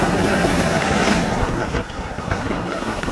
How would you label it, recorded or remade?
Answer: remade